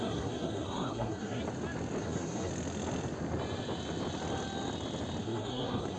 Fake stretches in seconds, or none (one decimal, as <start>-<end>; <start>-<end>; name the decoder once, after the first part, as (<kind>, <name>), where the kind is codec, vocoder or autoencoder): 0.0-1.4 (codec, SNAC); 2.0-2.5; 5.2-6.0